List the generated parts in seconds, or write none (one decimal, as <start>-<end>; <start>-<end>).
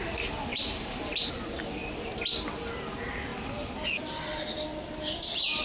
0.5-1.3